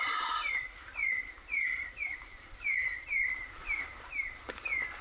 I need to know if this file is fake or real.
fake